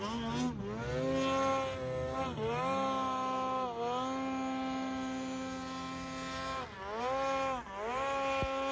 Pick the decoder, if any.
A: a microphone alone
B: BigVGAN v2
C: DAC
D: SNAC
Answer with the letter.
A